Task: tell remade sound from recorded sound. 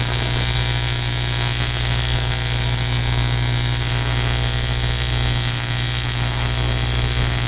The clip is remade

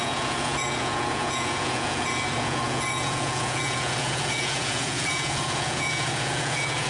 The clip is remade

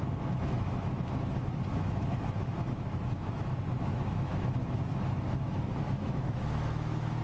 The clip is remade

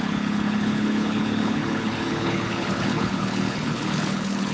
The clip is remade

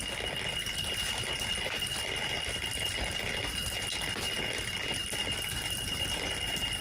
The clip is recorded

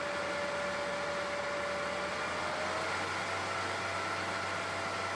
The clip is recorded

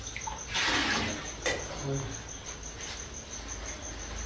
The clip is recorded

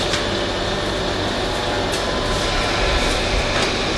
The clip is recorded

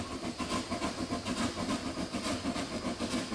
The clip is recorded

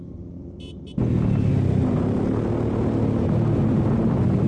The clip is recorded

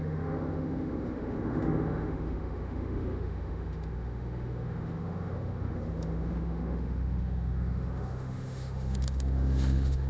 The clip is remade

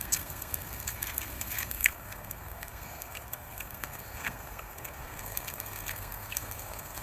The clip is remade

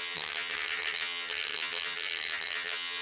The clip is remade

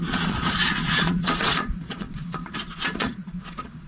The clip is remade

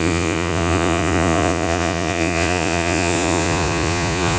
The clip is remade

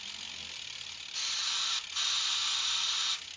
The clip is recorded